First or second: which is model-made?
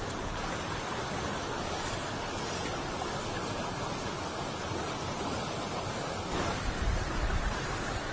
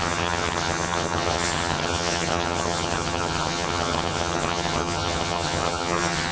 second